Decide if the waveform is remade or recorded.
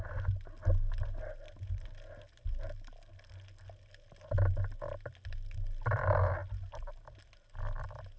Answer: recorded